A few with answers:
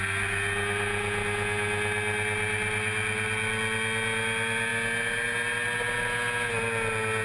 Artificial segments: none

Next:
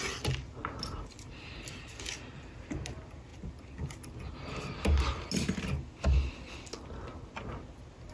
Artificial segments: none

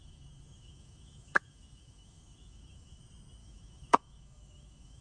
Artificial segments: 0.0-3.0 (autoencoder, DAC-VAE); 3.4-5.0

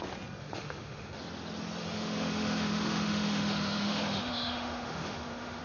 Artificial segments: 0.4-1.2 (autoencoder, DAC-VAE); 1.8-5.6